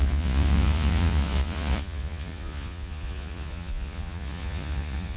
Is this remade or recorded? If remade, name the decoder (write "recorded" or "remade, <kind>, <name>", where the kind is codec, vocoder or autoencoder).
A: remade, vocoder, Vocos